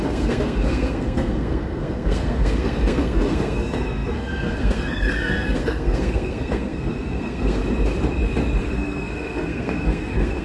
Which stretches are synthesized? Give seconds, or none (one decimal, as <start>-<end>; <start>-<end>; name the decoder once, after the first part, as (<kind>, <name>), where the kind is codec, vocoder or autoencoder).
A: 0.0-7.6 (codec, SNAC); 8.6-10.4

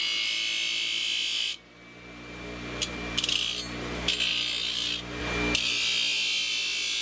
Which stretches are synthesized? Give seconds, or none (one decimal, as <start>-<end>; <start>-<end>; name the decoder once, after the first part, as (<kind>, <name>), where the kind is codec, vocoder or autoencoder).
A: none

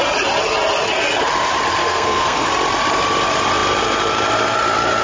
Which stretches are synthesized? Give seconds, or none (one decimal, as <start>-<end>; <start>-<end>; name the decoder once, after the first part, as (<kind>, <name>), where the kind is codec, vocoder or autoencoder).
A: 1.8-2.5 (codec, SNAC)

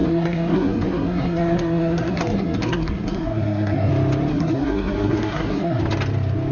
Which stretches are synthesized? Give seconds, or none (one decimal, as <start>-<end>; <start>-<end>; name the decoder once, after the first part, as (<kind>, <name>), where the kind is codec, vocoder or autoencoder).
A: 0.0-3.9 (codec, SNAC); 4.3-5.8

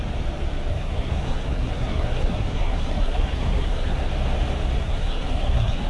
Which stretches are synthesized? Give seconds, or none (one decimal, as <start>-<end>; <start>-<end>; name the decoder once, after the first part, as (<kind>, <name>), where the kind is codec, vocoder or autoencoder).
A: 0.7-4.1 (codec, SNAC); 4.8-5.9

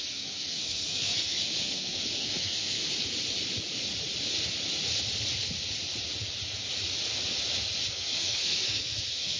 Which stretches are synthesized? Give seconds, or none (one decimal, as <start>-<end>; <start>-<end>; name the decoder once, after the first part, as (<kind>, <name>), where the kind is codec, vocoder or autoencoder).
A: 0.0-2.8 (codec, SNAC); 7.9-9.4

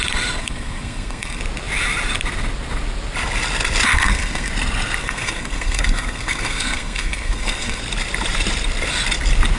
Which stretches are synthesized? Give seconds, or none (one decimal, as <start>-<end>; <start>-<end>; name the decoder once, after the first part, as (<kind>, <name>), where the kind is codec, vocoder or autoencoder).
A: 0.4-1.4 (codec, SNAC); 3.9-4.5; 5.0-7.8